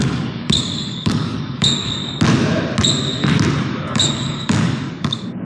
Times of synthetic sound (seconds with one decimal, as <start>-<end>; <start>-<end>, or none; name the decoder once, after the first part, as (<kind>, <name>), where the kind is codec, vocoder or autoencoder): 0.0-2.0 (codec, DAC); 3.6-5.4